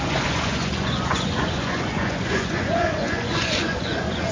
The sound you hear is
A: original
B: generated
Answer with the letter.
B